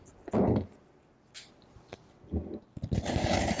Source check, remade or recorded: recorded